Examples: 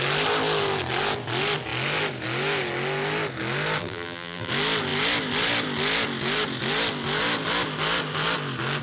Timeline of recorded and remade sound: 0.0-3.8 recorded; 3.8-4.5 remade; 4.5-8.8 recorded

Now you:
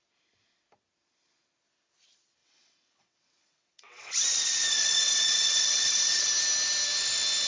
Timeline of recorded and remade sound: 0.0-2.4 recorded; 2.4-6.3 remade; 6.3-7.5 recorded

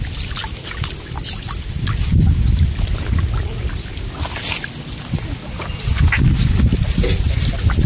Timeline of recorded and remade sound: 0.0-7.9 recorded

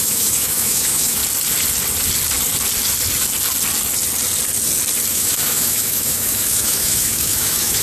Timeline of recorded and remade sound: 0.0-1.2 remade; 1.2-5.1 recorded; 5.1-7.8 remade

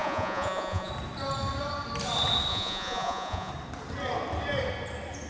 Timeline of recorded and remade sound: 0.0-0.9 remade; 0.9-2.5 recorded; 2.5-3.5 remade; 3.5-5.3 recorded